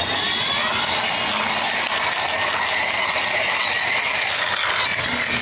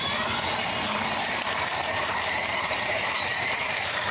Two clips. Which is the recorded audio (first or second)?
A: first